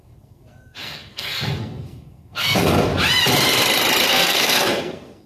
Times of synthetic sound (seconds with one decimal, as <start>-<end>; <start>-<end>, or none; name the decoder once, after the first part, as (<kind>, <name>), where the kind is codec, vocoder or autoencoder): 0.0-2.9 (codec, SNAC); 4.1-5.3